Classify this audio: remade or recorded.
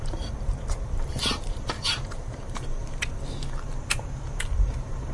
remade